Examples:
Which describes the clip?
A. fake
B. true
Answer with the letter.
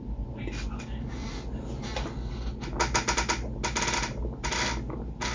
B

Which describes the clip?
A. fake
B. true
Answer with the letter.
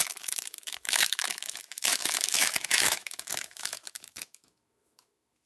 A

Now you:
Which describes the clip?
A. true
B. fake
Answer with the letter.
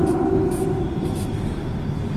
A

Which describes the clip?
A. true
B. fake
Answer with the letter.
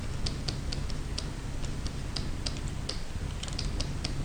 A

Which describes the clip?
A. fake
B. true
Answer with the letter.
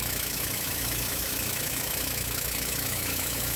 A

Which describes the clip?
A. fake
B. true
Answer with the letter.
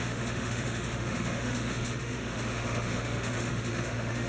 A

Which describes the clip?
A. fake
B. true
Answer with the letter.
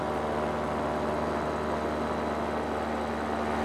B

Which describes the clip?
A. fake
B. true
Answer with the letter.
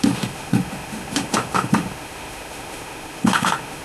A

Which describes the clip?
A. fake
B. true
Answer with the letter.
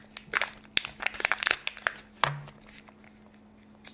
B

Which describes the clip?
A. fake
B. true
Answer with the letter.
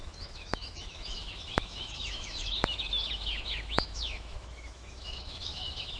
A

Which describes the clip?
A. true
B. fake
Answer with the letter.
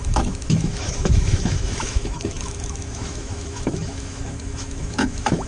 B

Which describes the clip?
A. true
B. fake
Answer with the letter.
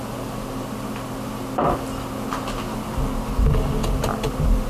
A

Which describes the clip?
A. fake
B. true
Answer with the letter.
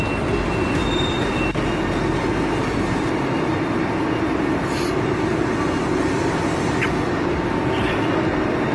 B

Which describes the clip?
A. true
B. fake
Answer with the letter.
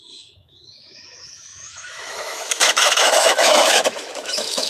B